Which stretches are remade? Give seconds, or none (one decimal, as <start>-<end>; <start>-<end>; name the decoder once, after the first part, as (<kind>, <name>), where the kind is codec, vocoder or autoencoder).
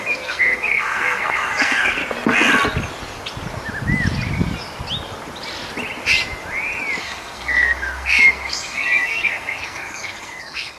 0.0-2.0 (codec, SNAC); 7.0-10.8